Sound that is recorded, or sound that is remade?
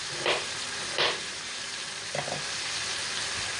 recorded